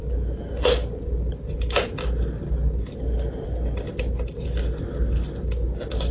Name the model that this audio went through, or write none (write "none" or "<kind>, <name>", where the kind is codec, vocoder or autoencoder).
none